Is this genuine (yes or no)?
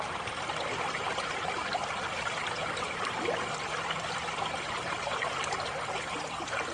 yes